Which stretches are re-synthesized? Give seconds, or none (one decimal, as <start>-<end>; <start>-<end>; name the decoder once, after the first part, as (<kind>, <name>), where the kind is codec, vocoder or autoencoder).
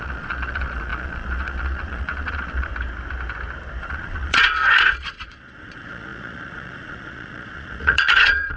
0.0-2.7 (vocoder, Vocos); 3.8-8.6